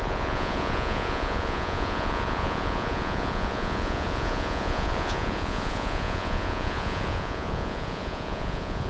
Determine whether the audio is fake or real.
fake